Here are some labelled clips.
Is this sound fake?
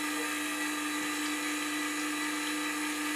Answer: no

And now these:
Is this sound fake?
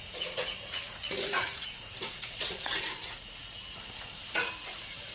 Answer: yes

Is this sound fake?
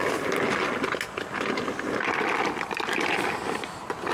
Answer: no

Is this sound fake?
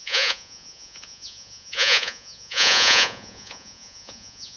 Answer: yes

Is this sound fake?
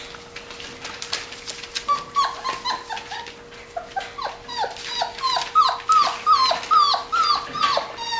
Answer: no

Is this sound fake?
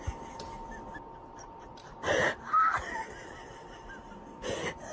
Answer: no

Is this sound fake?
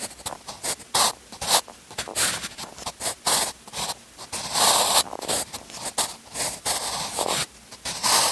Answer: no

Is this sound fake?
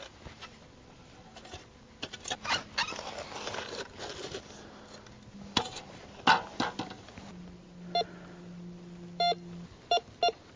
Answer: no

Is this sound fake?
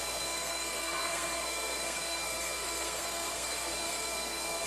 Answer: yes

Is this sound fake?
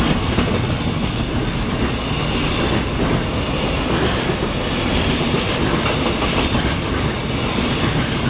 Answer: no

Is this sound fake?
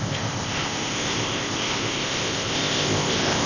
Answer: yes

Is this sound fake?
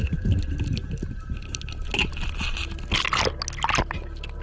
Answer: no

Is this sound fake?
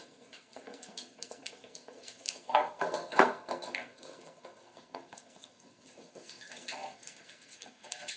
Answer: yes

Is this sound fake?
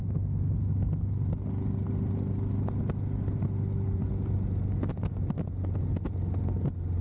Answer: no